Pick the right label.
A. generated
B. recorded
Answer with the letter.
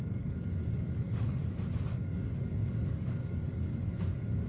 A